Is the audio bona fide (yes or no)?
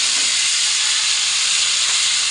yes